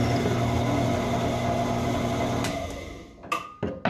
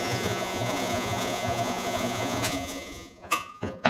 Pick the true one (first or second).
first